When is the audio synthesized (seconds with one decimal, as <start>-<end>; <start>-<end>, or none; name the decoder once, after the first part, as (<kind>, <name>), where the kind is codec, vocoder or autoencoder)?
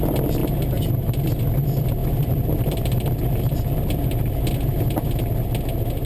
none